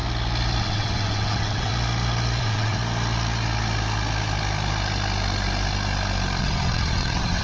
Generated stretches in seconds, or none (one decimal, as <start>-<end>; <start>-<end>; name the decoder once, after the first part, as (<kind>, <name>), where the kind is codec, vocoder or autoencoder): 0.6-1.7 (vocoder, WaveNeXt); 2.4-2.8; 6.4-7.4